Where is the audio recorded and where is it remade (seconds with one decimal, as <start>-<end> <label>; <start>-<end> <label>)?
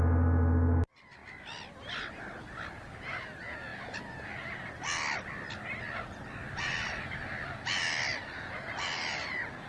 0.0-9.7 recorded